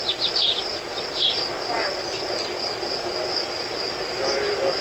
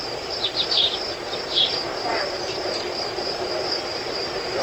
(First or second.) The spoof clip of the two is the second